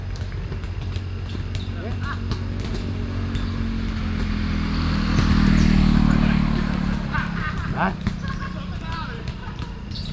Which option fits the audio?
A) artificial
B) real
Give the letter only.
B